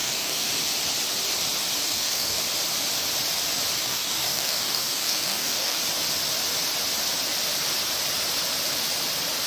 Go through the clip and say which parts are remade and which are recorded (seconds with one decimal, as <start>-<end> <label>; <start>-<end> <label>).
0.0-0.6 remade; 0.6-1.8 recorded; 1.8-2.4 remade; 2.4-3.8 recorded; 3.8-5.8 remade; 5.8-9.5 recorded